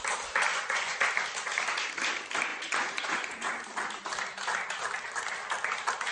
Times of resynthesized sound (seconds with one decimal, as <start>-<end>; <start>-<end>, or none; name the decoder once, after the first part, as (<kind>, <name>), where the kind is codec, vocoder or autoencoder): 0.5-1.0 (vocoder, Vocos); 2.5-3.5